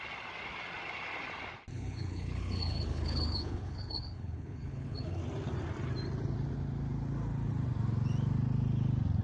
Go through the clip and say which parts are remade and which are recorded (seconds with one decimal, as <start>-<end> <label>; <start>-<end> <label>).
0.0-1.7 recorded; 1.7-5.2 remade; 5.2-9.2 recorded